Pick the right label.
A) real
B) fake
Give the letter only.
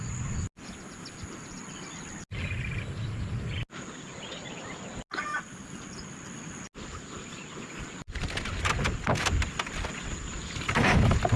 A